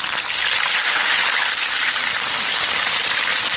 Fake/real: real